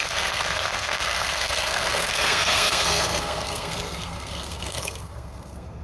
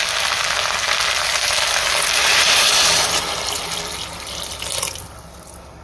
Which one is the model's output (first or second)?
first